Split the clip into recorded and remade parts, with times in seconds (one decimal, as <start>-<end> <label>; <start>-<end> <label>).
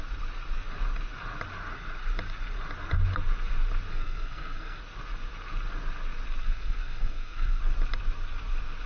0.0-3.9 recorded; 3.9-4.8 remade; 4.8-6.4 recorded; 6.4-7.6 remade; 7.6-8.9 recorded